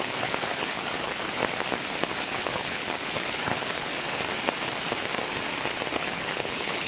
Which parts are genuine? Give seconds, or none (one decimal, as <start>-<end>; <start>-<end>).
1.4-2.2; 3.9-6.0